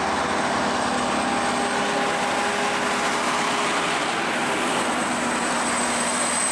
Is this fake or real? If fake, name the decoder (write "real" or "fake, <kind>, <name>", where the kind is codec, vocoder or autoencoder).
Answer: real